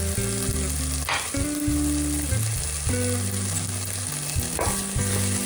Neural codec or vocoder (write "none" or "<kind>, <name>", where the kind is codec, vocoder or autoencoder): none